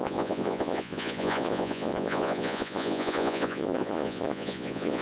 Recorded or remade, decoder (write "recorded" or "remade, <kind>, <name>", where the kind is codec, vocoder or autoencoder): remade, vocoder, Vocos